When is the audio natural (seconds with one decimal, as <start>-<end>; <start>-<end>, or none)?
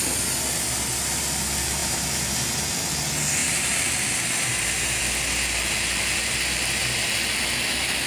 0.0-1.8; 2.3-3.4; 5.0-8.1